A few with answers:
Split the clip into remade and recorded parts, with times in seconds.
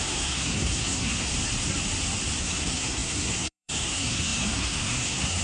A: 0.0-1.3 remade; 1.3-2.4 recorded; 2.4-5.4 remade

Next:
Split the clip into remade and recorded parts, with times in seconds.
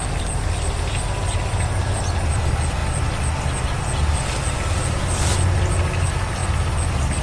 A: 0.0-7.2 recorded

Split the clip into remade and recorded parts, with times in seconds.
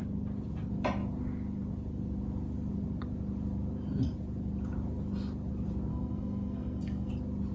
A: 0.0-5.9 recorded; 5.9-7.1 remade; 7.1-7.5 recorded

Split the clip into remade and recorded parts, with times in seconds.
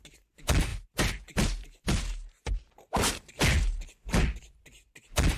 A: 0.0-5.4 recorded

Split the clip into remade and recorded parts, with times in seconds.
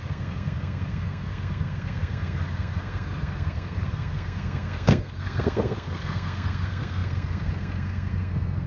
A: 0.0-8.7 remade